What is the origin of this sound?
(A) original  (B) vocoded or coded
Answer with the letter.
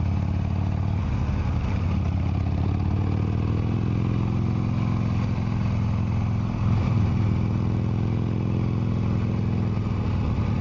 A